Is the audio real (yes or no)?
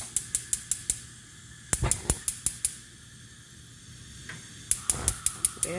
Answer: yes